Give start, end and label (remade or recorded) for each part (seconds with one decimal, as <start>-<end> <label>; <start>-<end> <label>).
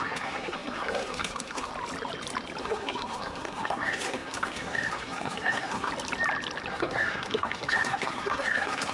0.0-1.7 remade; 1.7-2.6 recorded; 2.6-5.9 remade; 5.9-6.7 recorded; 6.7-8.9 remade